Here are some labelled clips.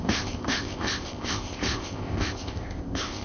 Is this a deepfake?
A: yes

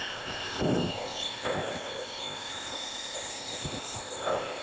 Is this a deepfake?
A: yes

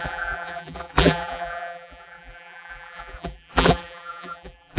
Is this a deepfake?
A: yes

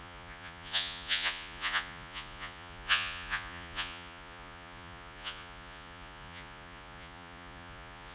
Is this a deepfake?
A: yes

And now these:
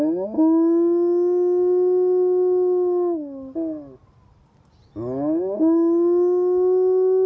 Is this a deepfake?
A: no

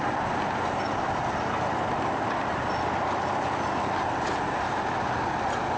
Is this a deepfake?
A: no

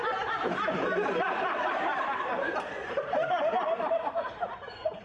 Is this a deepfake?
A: yes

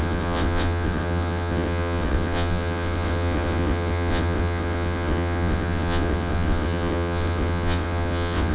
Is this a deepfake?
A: yes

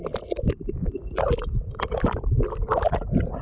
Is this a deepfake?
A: no